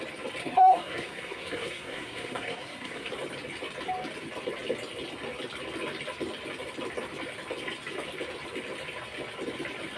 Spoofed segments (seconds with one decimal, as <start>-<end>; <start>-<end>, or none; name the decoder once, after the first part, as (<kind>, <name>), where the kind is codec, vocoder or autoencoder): 0.4-3.1 (codec, SNAC)